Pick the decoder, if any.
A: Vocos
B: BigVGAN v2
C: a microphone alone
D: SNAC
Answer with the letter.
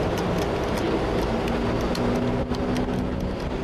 C